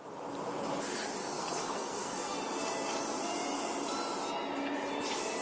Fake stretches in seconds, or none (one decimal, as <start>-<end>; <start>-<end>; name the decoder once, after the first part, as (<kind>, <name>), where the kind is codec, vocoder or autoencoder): 1.2-2.4 (codec, SNAC)